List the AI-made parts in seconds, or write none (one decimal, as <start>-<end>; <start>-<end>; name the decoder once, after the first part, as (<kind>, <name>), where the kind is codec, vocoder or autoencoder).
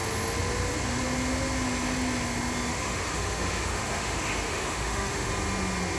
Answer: 2.7-5.3 (autoencoder, DAC-VAE)